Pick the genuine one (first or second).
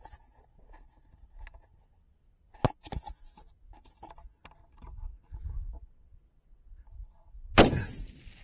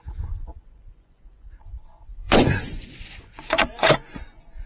first